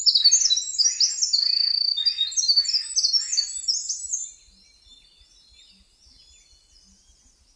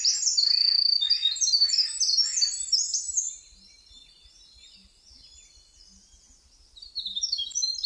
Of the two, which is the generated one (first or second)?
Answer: second